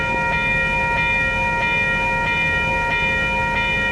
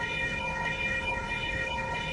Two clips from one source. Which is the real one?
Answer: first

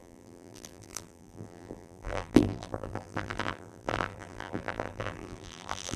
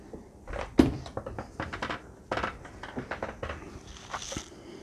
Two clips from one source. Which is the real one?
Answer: second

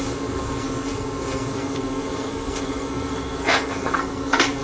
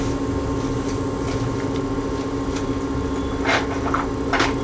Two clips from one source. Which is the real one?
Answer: second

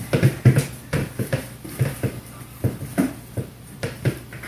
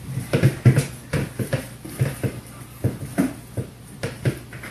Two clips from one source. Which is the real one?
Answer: second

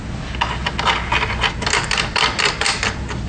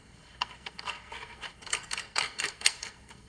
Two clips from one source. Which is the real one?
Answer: first